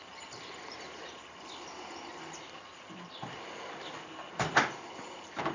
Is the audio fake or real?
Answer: real